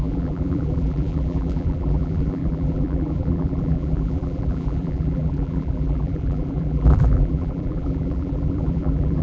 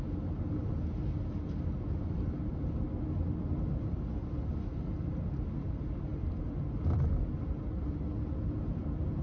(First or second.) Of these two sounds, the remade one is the first